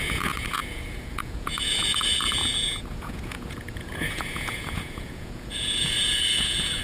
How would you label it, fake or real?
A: fake